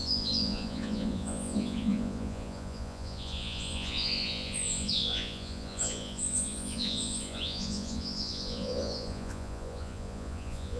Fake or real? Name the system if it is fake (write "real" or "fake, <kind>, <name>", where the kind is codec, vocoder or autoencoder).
fake, vocoder, Vocos